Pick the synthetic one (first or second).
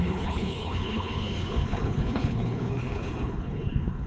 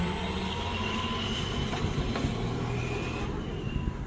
first